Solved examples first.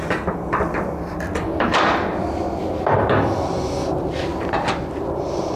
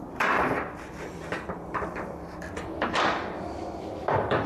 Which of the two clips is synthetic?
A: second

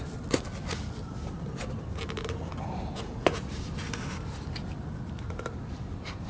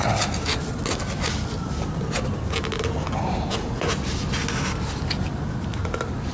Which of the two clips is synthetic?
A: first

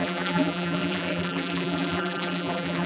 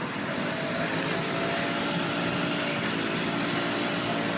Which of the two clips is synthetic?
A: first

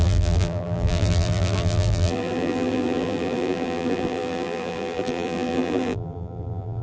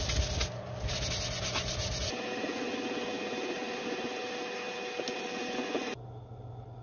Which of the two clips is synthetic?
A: first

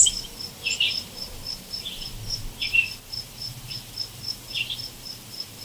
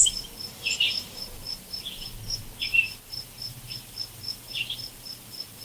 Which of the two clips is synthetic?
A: first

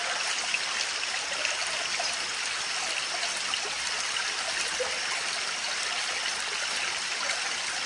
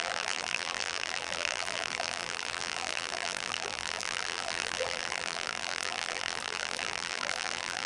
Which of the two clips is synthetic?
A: second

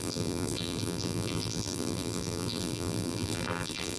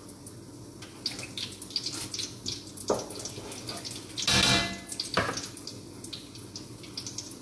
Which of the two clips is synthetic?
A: first